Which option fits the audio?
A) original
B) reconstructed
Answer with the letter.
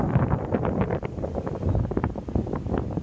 B